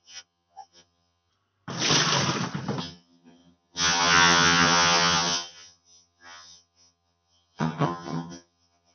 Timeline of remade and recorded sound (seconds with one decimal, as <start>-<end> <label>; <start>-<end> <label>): 0.0-1.3 remade; 1.3-2.8 recorded; 2.8-8.9 remade